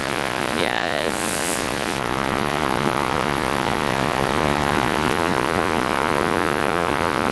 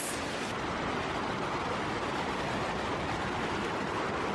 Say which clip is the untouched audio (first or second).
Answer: second